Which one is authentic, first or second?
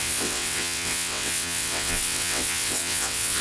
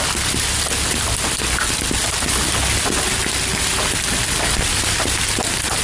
second